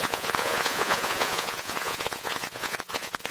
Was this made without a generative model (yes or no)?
no